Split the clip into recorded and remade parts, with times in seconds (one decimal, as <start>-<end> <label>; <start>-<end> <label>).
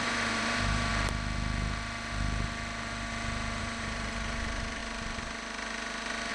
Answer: 0.0-0.9 remade; 0.9-3.6 recorded; 3.6-4.8 remade; 4.8-6.3 recorded